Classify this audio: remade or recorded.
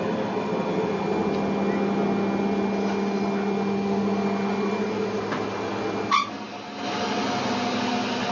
recorded